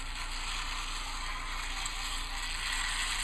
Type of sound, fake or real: real